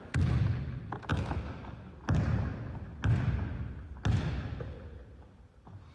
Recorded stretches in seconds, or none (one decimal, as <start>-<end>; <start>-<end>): 0.0-5.9